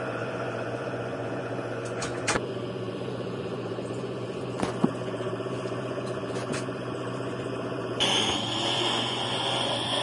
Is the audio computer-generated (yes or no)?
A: yes